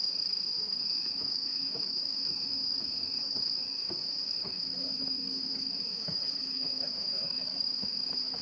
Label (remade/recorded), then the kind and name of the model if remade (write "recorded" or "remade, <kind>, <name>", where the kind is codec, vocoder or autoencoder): remade, autoencoder, DAC-VAE